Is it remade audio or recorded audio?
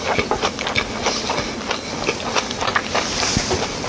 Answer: recorded